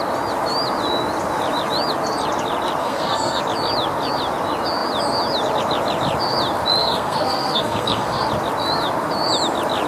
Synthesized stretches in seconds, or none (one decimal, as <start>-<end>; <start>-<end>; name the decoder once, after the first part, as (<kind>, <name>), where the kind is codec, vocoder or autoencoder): 2.8-3.4 (codec, SNAC); 6.8-8.3